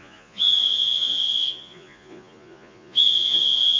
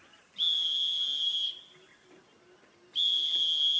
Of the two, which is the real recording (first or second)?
second